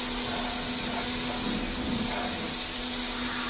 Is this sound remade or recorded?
recorded